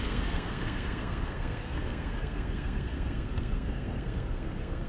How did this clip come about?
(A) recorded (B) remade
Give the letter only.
B